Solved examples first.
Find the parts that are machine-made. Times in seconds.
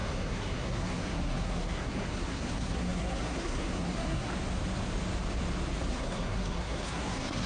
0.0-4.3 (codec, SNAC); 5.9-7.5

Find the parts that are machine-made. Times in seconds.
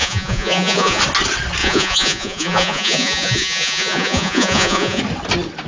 0.0-1.0 (vocoder, Vocos); 1.6-5.0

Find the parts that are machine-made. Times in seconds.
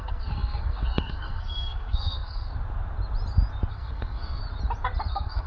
0.0-2.5 (codec, SNAC); 3.7-4.4; 5.1-5.5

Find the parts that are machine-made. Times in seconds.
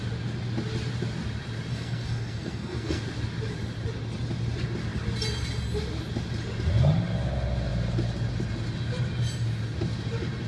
1.7-3.0 (codec, SNAC)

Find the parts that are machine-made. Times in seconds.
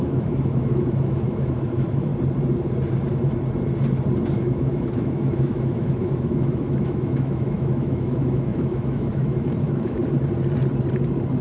0.0-2.1 (autoencoder, DAC-VAE); 4.3-10.0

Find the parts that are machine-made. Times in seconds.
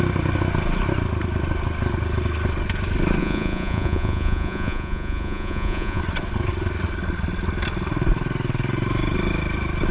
3.2-6.0 (vocoder, Vocos)